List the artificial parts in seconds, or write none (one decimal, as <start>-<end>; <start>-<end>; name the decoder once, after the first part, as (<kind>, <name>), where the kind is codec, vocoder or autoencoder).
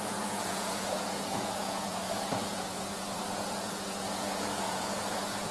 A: 0.0-5.5 (vocoder, Vocos)